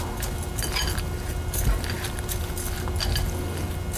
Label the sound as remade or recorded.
recorded